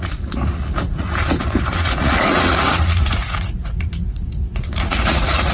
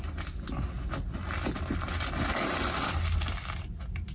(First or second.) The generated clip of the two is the first